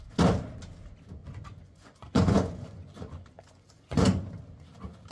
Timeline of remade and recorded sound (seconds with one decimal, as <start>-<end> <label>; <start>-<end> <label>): 0.0-1.2 recorded; 1.2-4.3 remade; 4.3-5.1 recorded